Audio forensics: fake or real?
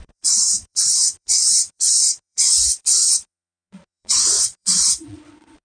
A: fake